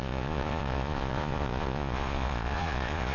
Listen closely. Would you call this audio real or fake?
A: fake